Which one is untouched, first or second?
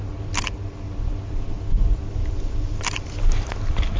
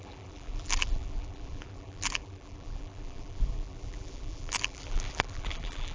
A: first